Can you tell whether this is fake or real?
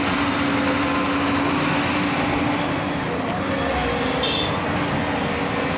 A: real